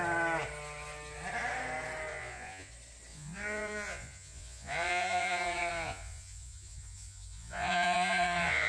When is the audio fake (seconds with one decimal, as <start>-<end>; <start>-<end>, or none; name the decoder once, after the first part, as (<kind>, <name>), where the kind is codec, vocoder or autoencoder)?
2.1-2.7 (vocoder, Vocos); 3.1-8.7